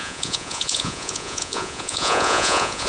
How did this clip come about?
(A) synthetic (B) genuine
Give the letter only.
A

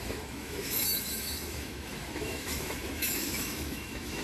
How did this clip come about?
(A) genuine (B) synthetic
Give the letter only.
B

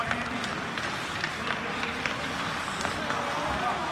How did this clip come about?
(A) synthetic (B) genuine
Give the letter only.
B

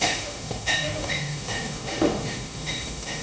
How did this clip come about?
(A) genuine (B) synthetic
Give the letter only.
B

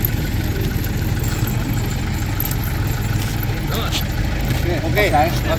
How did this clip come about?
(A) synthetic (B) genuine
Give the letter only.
B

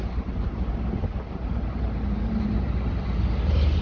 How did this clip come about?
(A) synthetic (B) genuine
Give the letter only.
A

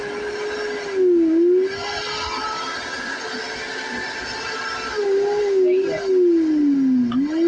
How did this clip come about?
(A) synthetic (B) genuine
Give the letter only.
B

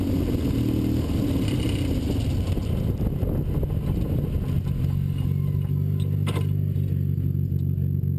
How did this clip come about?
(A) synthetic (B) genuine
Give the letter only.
B